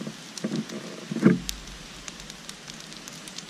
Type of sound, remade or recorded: recorded